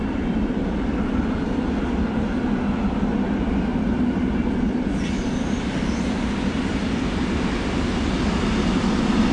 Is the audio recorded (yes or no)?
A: yes